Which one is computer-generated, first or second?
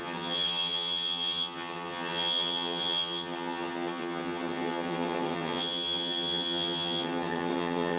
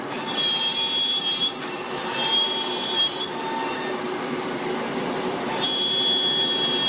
first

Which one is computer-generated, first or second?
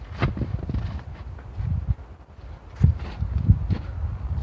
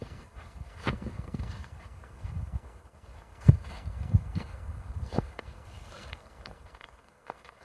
second